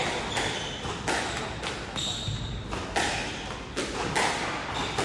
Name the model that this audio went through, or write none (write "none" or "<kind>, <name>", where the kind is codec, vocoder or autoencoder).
none